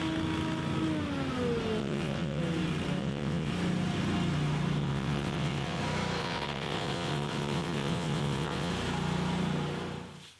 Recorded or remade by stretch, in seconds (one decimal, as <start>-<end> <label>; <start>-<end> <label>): 0.0-1.8 recorded; 1.8-2.4 remade; 2.4-3.0 recorded; 3.0-3.5 remade; 3.5-4.8 recorded; 4.8-5.8 remade; 5.8-6.2 recorded; 6.2-8.7 remade; 8.7-10.4 recorded

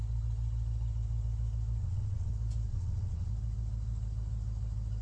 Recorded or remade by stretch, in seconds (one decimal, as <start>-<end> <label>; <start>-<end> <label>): 0.0-1.8 recorded; 1.8-2.3 remade; 2.3-2.7 recorded; 2.7-3.3 remade; 3.3-5.0 recorded

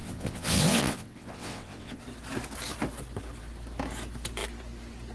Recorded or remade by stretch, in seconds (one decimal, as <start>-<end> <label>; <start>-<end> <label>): 0.0-2.0 remade; 2.0-5.1 recorded

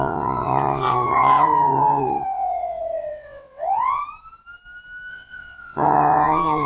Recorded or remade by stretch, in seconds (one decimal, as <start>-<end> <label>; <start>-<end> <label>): 0.0-4.0 remade; 4.0-5.1 recorded; 5.1-6.7 remade

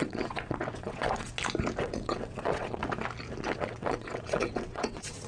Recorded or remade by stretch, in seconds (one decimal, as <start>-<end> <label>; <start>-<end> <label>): 0.0-1.3 remade; 1.3-1.8 recorded; 1.8-2.8 remade; 2.8-3.4 recorded; 3.4-5.3 remade

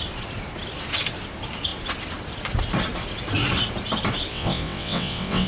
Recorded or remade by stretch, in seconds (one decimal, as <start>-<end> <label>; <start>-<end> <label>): 0.0-4.3 recorded; 4.3-5.5 remade

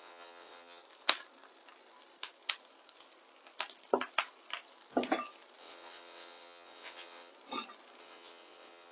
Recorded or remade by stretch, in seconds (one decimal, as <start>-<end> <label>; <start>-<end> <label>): 0.0-0.8 remade; 0.8-5.6 recorded; 5.6-7.3 remade; 7.3-8.0 recorded; 8.0-8.9 remade